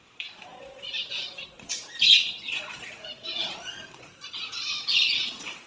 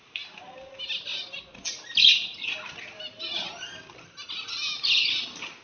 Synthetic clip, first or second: first